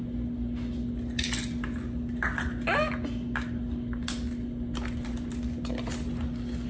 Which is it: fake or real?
real